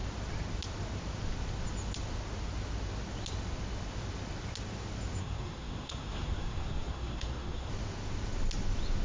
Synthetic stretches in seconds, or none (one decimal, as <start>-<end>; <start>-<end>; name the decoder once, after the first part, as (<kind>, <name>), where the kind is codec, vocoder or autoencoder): 5.2-7.7 (codec, SNAC)